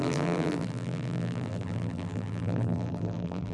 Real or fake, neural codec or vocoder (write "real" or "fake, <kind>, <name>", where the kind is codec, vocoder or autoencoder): fake, vocoder, BigVGAN v2